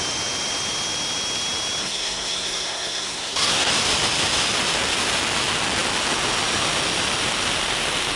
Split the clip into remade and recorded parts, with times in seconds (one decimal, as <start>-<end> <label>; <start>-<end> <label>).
0.0-1.8 recorded; 1.8-3.7 remade; 3.7-8.2 recorded